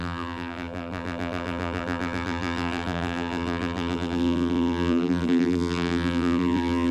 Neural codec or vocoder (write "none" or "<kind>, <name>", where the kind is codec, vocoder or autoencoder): vocoder, BigVGAN v2